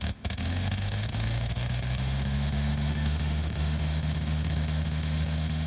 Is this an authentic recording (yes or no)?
no